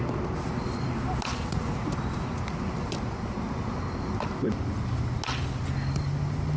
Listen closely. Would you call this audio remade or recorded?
recorded